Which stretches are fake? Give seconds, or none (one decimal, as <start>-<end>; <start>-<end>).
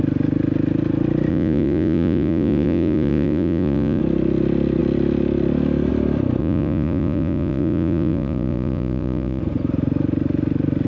1.3-4.0; 6.4-9.4